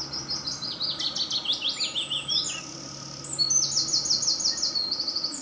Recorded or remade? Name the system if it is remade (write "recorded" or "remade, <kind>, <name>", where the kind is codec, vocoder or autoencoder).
recorded